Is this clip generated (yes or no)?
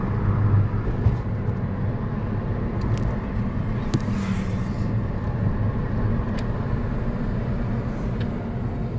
no